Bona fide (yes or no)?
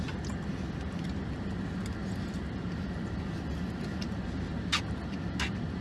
yes